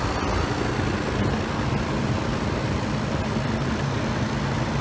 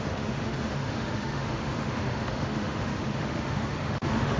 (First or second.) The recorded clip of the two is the first